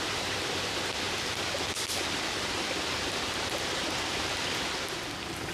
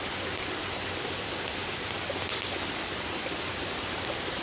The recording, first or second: second